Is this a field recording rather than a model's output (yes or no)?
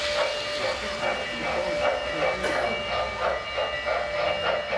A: yes